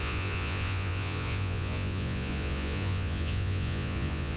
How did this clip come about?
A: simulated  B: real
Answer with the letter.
A